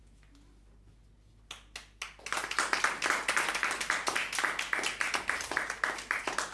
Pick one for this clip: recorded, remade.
recorded